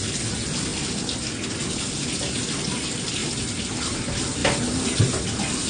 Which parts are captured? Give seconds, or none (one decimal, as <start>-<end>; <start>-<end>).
0.0-5.7